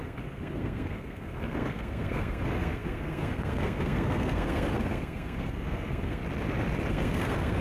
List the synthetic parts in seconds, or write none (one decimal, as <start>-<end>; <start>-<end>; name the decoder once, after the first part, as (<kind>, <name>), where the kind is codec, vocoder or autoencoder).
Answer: 0.0-6.2 (codec, SNAC); 6.9-7.6